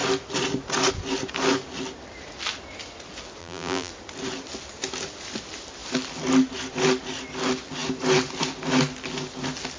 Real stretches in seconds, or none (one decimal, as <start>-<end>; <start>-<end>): 0.0-3.4; 3.9-9.8